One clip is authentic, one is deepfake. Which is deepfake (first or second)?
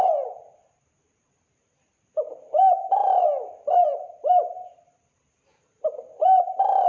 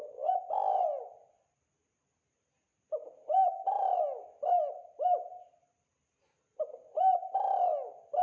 first